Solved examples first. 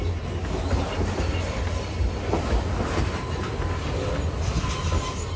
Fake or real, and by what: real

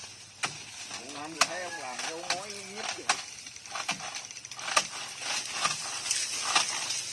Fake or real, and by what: real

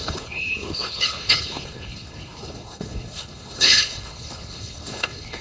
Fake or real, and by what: fake, codec, HILCodec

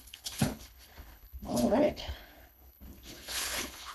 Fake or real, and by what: fake, codec, HILCodec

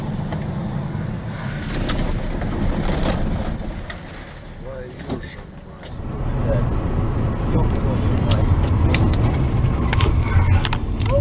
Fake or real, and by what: real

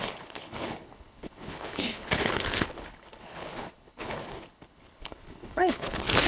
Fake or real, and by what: fake, codec, HILCodec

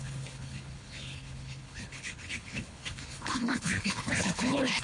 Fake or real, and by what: fake, codec, HILCodec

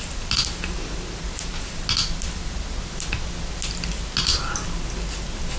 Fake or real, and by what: real